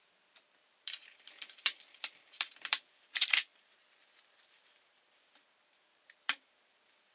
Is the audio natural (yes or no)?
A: no